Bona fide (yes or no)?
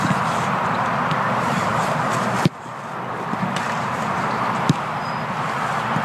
no